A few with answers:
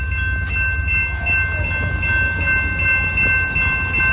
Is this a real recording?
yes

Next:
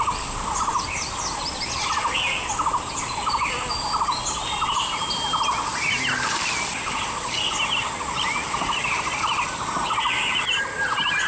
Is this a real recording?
yes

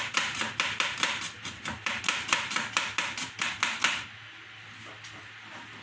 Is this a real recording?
yes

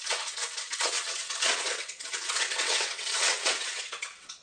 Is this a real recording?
no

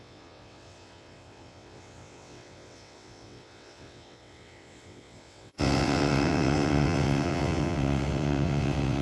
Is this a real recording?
no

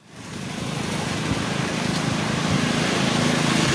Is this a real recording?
yes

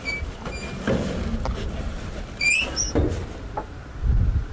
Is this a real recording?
yes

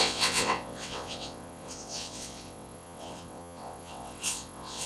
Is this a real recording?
no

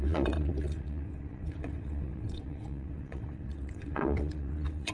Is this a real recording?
no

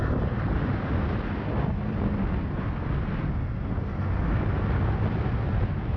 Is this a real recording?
yes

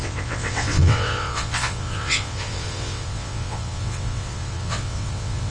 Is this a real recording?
no